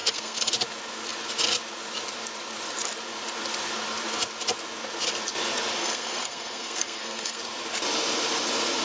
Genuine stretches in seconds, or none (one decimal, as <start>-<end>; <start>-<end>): 0.5-5.8; 7.4-8.8